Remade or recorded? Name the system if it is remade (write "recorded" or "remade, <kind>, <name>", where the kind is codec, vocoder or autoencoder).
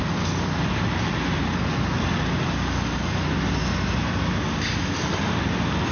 recorded